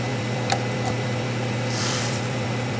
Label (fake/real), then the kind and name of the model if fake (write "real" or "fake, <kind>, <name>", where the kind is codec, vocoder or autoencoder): fake, vocoder, BigVGAN v2